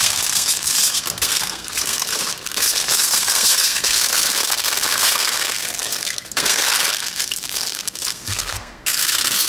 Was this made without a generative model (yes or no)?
no